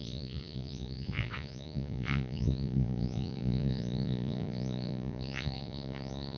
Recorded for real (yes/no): no